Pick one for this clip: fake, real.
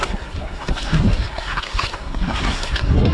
fake